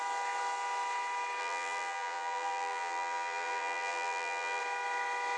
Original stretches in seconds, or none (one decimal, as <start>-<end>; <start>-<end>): 0.0-1.4; 4.6-5.4